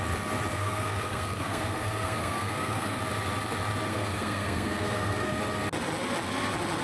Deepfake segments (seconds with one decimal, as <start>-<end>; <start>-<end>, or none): 0.5-3.0; 3.9-5.4